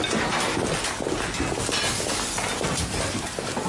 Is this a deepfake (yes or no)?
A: no